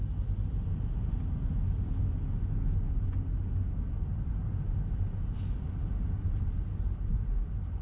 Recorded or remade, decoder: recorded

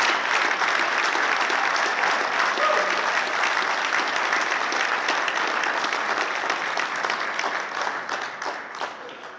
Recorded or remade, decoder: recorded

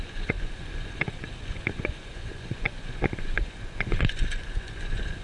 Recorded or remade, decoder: remade, vocoder, Vocos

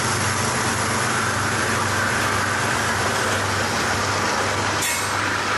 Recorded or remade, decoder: recorded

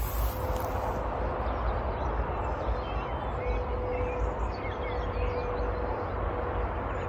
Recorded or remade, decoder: recorded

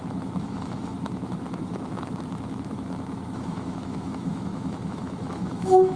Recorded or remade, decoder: remade, autoencoder, DAC-VAE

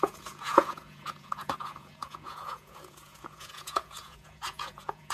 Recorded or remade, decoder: remade, vocoder, Vocos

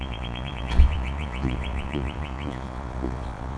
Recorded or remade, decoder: remade, vocoder, Vocos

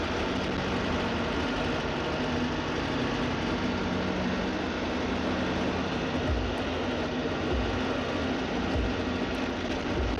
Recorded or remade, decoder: recorded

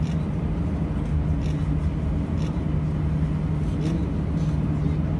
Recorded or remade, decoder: recorded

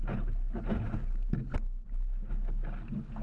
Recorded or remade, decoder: recorded